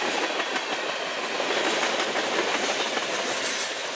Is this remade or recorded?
recorded